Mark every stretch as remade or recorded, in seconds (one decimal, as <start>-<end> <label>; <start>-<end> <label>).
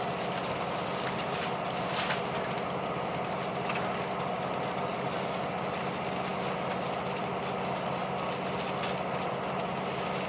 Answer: 0.0-10.3 recorded